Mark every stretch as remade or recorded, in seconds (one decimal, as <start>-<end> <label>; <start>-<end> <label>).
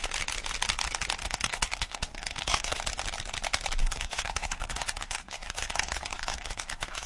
0.0-1.2 recorded; 1.2-2.8 remade; 2.8-3.8 recorded; 3.8-7.1 remade